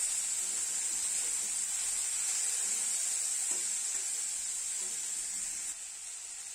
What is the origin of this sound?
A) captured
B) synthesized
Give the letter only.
A